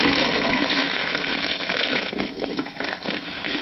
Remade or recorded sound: remade